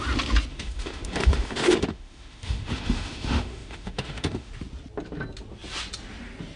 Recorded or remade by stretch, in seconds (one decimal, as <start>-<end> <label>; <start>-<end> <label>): 0.0-0.5 recorded; 0.5-4.5 remade; 4.5-6.6 recorded